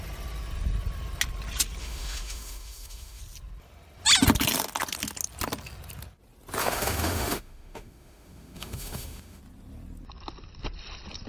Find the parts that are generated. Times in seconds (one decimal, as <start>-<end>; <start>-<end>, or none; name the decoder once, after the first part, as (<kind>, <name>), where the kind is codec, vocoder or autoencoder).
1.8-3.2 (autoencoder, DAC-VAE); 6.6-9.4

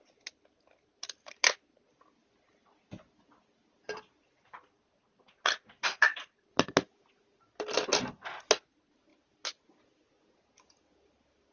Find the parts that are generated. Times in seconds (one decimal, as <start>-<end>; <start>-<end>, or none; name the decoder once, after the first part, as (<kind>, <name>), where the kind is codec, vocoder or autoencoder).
none

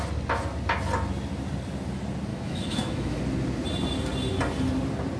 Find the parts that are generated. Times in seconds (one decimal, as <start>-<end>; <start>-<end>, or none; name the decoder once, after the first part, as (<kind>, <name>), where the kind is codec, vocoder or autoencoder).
2.3-3.2 (autoencoder, DAC-VAE)

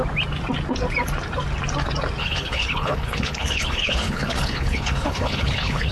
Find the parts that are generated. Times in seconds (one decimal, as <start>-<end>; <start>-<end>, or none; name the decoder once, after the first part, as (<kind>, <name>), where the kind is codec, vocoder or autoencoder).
2.2-5.9 (codec, HILCodec)

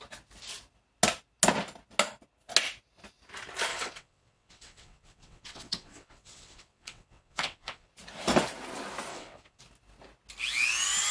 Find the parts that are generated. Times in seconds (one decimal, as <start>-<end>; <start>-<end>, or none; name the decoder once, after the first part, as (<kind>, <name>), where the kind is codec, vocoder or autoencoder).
3.7-7.9 (vocoder, WaveNeXt); 9.1-9.6

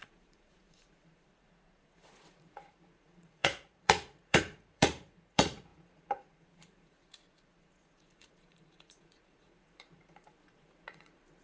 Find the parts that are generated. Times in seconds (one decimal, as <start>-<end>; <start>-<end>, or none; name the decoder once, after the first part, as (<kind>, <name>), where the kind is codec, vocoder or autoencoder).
0.0-11.4 (vocoder, Vocos)

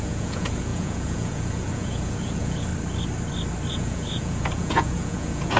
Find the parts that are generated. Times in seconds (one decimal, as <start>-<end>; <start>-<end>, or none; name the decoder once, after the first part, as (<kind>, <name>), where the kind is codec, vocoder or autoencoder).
0.0-2.7 (vocoder, Vocos); 3.7-5.6